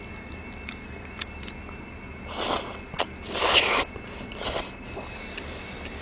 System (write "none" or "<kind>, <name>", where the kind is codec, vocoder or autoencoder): none